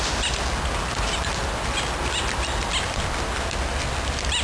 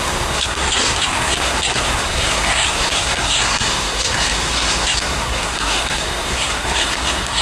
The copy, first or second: second